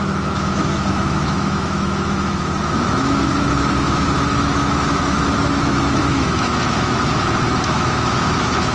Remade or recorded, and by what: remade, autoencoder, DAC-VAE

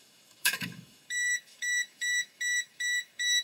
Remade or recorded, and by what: remade, autoencoder, DAC-VAE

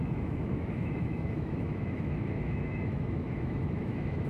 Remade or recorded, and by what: remade, autoencoder, DAC-VAE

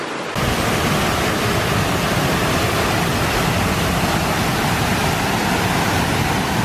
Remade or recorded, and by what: recorded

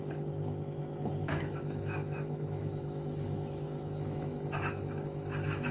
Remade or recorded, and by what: remade, autoencoder, DAC-VAE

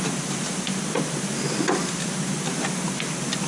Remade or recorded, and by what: recorded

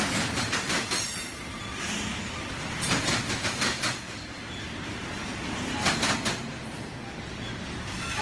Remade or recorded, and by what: recorded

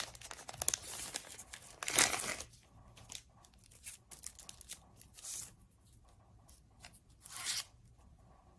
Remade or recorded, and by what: recorded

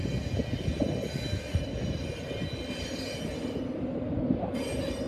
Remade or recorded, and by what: recorded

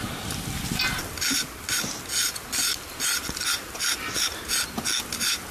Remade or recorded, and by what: recorded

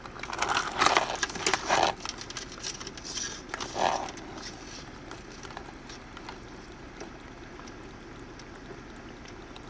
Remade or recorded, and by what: recorded